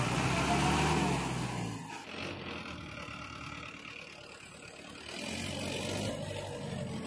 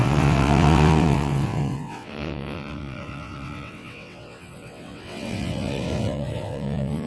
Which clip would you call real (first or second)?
first